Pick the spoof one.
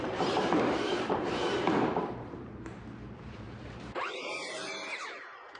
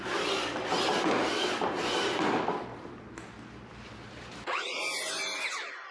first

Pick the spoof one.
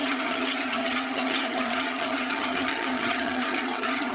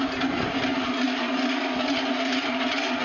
first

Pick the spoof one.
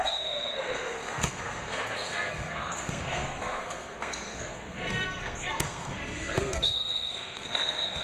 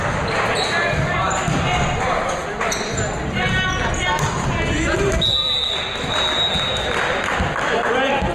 first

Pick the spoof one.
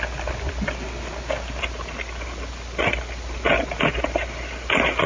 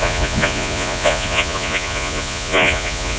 second